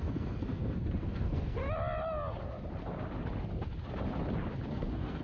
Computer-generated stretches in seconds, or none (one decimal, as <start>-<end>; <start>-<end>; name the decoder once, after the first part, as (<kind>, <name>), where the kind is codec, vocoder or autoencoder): 0.0-1.6 (codec, SNAC); 4.7-5.2